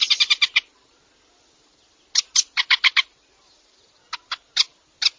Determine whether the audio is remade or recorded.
recorded